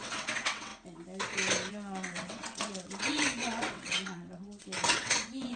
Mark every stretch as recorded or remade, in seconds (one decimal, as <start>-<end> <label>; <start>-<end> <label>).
0.0-0.7 remade; 0.7-1.7 recorded; 1.7-5.6 remade